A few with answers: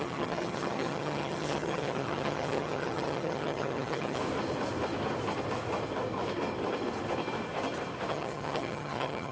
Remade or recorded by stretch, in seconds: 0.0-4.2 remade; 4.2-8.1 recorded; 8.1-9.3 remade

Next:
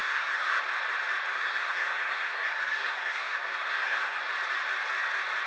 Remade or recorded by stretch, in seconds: 0.0-0.6 remade; 0.6-1.3 recorded; 1.3-4.2 remade; 4.2-5.5 recorded

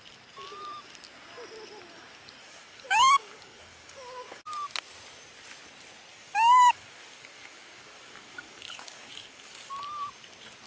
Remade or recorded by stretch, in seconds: 0.0-2.4 recorded; 2.4-4.4 remade; 4.4-6.1 recorded; 6.1-9.7 remade; 9.7-10.7 recorded

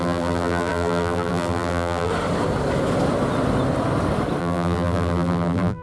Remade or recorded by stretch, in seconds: 0.0-2.1 remade; 2.1-4.4 recorded; 4.4-5.8 remade

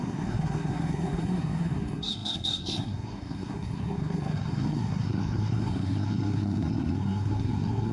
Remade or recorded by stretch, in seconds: 0.0-7.9 remade

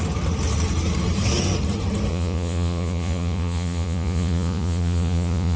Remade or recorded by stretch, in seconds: 0.0-2.1 recorded; 2.1-5.6 remade

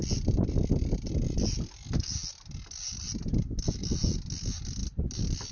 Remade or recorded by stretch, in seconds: 0.0-5.5 recorded

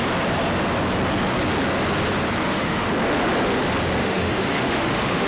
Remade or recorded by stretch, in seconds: 0.0-2.4 recorded; 2.4-2.9 remade; 2.9-4.0 recorded; 4.0-5.3 remade